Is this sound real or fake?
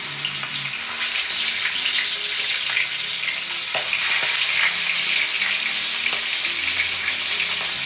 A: real